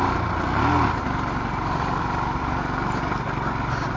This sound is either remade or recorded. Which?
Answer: recorded